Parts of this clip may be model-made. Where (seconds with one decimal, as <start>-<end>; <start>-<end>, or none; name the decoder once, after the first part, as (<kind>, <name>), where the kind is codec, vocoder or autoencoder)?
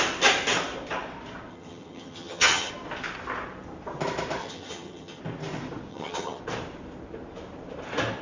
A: 1.5-2.7 (vocoder, HiFi-GAN); 4.4-5.2; 5.9-6.4